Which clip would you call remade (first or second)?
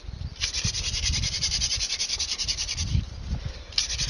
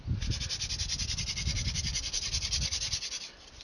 first